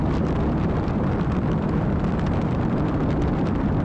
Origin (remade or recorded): remade